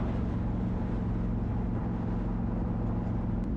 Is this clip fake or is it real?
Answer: real